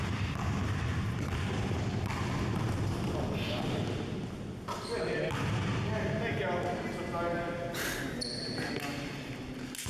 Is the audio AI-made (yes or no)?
no